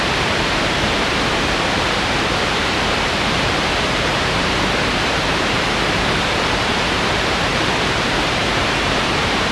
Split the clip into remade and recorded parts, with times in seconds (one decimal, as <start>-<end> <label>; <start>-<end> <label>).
0.0-9.5 remade

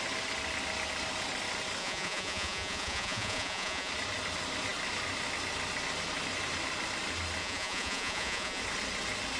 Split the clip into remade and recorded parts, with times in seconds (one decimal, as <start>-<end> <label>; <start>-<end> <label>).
0.0-1.8 recorded; 1.8-3.9 remade; 3.9-7.4 recorded; 7.4-8.6 remade; 8.6-9.4 recorded